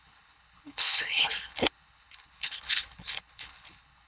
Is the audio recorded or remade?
remade